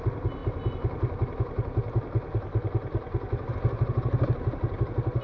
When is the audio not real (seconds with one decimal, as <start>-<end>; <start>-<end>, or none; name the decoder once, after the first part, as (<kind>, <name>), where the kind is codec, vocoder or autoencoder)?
none